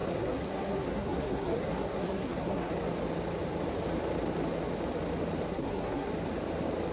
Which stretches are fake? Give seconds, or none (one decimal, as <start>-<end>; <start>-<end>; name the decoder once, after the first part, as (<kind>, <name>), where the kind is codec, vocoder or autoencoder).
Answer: 0.0-2.7 (codec, SNAC); 5.5-6.1